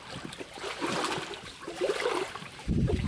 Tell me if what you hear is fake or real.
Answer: real